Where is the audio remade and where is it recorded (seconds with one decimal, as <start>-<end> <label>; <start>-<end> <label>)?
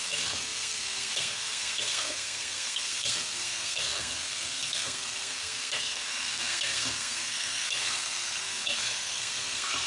0.0-9.9 remade